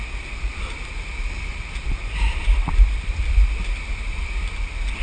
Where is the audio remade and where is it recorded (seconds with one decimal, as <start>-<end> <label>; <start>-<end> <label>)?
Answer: 0.0-1.5 recorded; 1.5-3.1 remade; 3.1-5.0 recorded